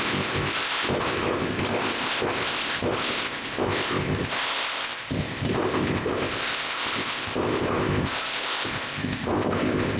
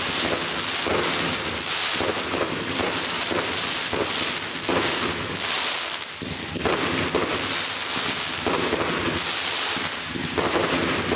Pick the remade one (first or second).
first